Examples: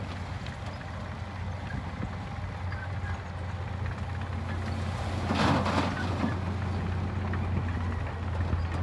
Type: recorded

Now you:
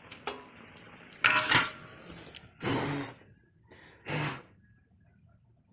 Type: recorded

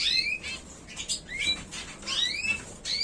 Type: recorded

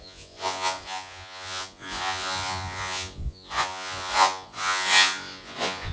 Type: remade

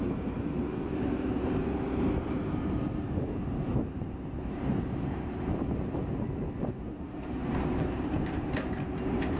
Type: remade